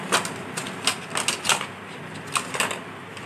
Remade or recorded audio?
recorded